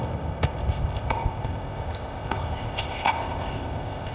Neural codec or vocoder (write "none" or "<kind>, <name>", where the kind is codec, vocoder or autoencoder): codec, ZipCodec